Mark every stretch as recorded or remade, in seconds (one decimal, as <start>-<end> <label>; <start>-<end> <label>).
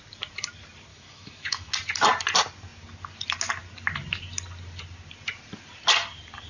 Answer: 0.0-0.9 recorded; 0.9-1.7 remade; 1.7-6.5 recorded